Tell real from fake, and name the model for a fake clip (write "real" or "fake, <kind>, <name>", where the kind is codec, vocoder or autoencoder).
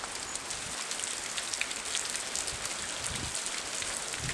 real